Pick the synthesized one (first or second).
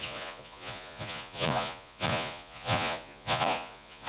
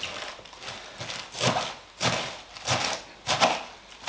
first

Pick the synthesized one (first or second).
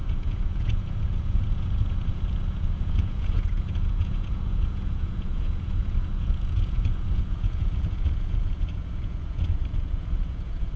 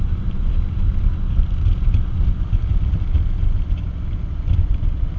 first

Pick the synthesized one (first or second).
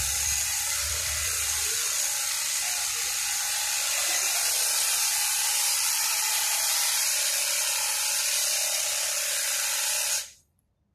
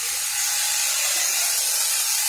first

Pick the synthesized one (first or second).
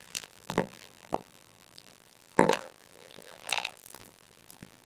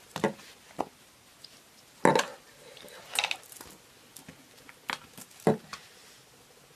first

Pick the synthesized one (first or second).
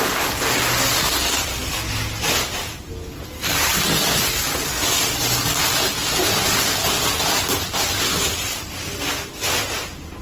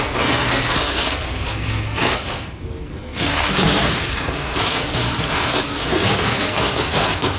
second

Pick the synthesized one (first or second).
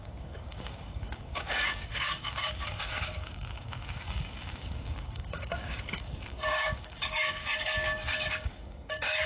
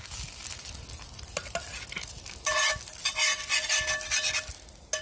first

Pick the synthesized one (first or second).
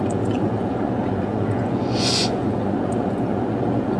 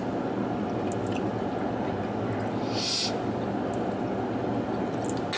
first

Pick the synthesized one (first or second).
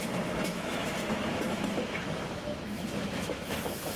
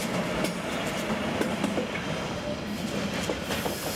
first